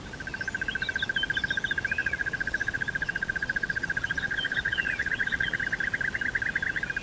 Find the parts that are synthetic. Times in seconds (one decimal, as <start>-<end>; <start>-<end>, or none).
2.0-5.6